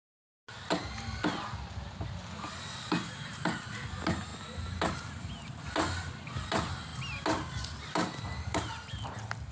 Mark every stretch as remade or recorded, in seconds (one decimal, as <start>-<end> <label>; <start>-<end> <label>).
0.0-9.5 recorded